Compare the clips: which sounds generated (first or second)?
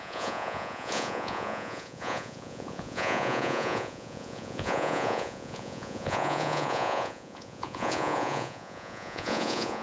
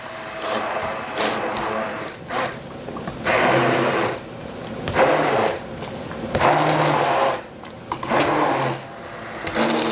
first